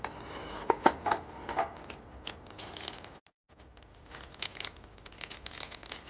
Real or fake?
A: real